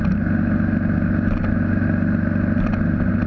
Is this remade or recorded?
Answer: recorded